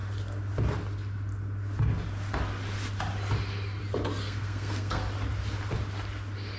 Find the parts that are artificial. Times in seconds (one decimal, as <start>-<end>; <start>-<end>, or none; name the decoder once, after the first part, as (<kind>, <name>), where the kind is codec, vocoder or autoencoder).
4.2-5.0 (codec, SNAC)